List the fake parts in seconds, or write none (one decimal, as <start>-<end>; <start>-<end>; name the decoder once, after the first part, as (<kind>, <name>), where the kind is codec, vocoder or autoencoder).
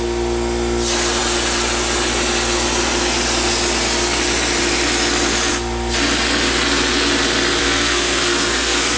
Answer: 7.6-9.0 (codec, SNAC)